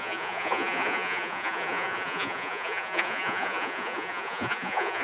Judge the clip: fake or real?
fake